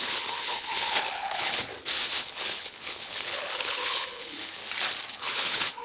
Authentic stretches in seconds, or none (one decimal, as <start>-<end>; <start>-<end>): 1.7-2.2; 4.6-5.1